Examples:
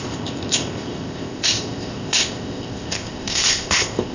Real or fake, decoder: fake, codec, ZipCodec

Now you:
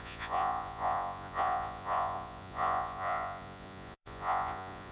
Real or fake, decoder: fake, vocoder, Vocos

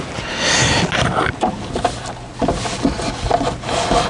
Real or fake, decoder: real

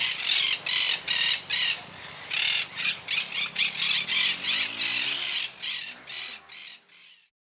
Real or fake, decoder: real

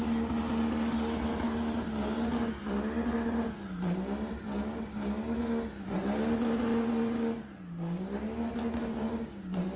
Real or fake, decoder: real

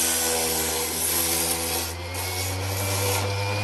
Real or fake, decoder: real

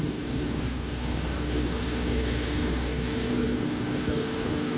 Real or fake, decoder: fake, codec, DAC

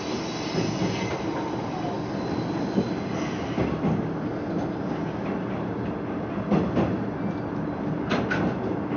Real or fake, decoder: real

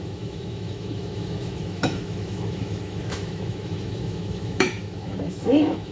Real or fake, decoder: fake, autoencoder, DAC-VAE